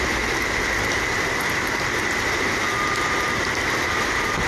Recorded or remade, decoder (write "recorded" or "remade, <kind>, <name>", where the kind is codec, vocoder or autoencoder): recorded